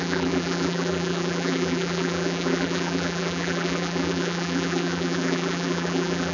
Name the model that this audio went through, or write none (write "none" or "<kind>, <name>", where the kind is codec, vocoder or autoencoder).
vocoder, BigVGAN v2